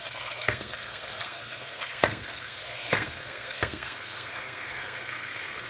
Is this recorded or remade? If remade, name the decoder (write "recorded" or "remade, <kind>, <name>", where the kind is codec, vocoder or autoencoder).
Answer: remade, codec, SNAC